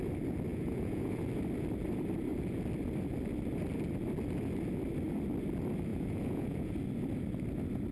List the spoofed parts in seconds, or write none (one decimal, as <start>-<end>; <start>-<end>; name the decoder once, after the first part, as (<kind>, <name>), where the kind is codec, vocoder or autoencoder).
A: 0.5-1.2 (vocoder, Vocos); 5.9-6.7